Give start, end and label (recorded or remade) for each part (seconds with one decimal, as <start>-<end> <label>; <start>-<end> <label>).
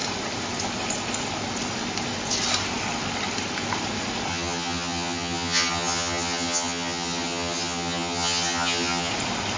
0.0-4.3 recorded; 4.3-9.1 remade; 9.1-9.6 recorded